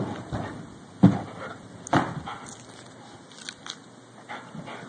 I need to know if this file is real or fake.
real